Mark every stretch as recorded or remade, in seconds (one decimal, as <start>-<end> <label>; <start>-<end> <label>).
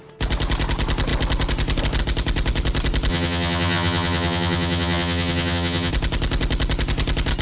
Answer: 0.0-3.1 recorded; 3.1-5.9 remade; 5.9-7.4 recorded